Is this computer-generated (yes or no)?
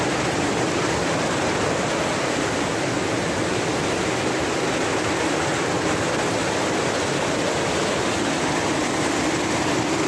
no